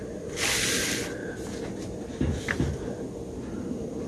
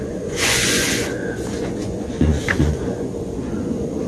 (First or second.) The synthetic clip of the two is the second